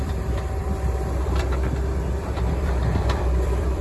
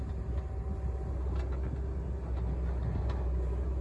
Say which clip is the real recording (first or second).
second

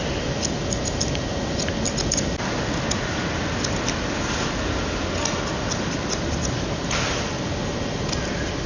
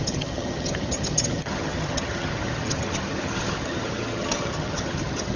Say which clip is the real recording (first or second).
first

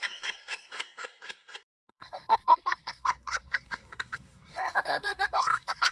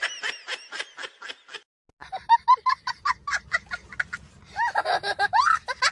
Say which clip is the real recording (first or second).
second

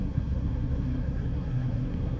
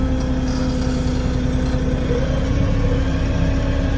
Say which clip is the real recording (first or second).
second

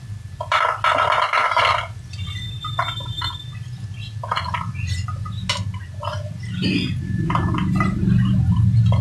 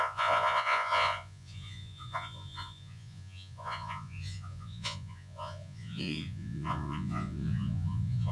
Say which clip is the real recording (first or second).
first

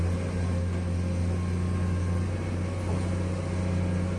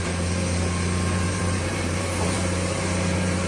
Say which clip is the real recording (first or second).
first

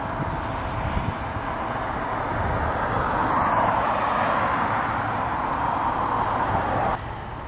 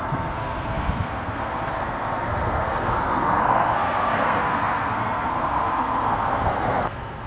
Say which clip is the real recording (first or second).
first